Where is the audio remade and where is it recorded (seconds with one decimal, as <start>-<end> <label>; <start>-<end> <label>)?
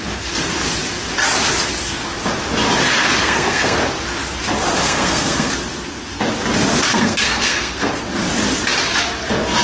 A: 0.0-3.2 recorded; 3.2-3.8 remade; 3.8-4.8 recorded; 4.8-5.5 remade; 5.5-6.9 recorded; 6.9-7.9 remade; 7.9-9.6 recorded